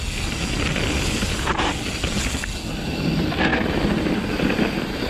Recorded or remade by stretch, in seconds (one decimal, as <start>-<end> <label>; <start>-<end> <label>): 0.0-5.1 recorded